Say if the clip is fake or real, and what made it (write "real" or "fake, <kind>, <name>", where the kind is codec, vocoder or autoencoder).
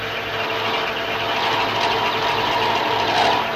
real